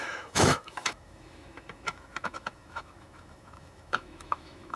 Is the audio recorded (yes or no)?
no